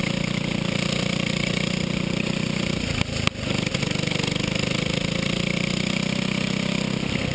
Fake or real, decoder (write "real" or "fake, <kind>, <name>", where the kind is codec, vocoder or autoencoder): real